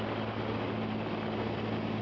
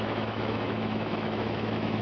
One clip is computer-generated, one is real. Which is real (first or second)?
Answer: first